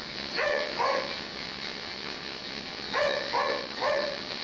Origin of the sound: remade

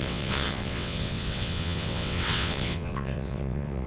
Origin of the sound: remade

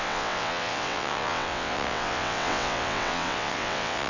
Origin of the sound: remade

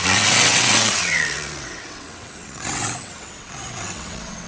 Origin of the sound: remade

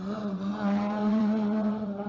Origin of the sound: remade